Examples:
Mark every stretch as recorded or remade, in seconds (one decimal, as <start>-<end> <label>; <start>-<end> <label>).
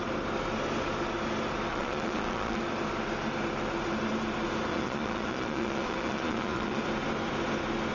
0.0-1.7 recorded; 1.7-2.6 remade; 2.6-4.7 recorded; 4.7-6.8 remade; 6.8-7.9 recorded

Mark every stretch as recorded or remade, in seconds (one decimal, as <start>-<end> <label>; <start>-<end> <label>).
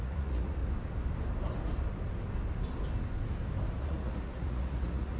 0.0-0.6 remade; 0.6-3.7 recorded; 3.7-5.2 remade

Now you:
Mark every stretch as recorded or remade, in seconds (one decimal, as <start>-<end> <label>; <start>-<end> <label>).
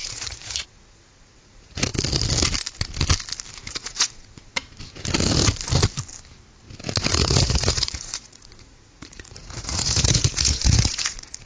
0.0-1.9 remade; 1.9-3.5 recorded; 3.5-4.5 remade; 4.5-7.1 recorded; 7.1-11.5 remade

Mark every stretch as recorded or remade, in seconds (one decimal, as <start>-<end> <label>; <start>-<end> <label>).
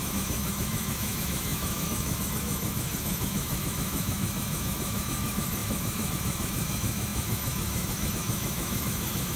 0.0-9.4 remade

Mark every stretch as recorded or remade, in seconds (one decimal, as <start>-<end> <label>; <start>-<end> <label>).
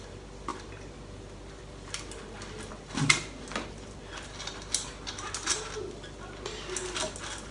0.0-7.5 recorded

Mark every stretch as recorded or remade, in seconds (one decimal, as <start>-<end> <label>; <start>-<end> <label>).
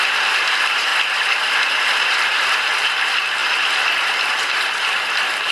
0.0-0.9 remade; 0.9-1.7 recorded; 1.7-5.5 remade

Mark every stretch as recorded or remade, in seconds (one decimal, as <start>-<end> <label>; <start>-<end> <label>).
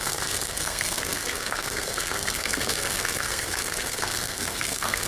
0.0-5.1 remade